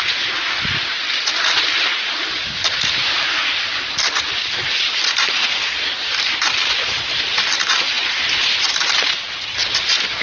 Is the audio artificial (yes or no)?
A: no